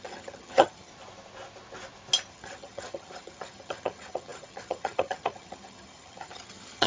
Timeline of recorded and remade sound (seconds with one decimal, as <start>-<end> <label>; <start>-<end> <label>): 0.0-0.9 remade; 0.9-2.3 recorded; 2.3-6.9 remade

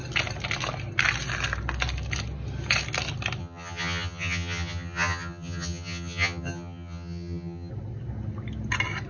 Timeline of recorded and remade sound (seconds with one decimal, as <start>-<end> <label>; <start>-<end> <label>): 0.0-3.4 recorded; 3.4-7.7 remade; 7.7-9.1 recorded

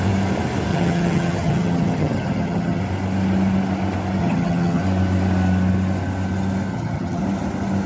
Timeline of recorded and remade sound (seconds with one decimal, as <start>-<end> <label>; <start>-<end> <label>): 0.0-0.7 recorded; 0.7-2.8 remade; 2.8-4.2 recorded; 4.2-4.8 remade; 4.8-6.7 recorded; 6.7-7.2 remade; 7.2-7.9 recorded